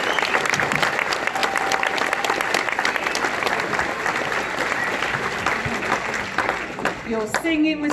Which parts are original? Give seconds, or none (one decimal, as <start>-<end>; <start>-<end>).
0.0-7.9